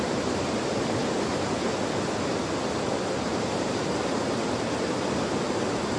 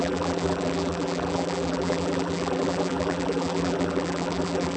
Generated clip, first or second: second